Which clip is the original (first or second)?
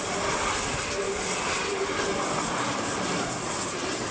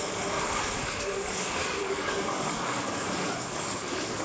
first